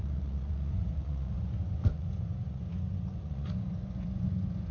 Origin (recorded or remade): remade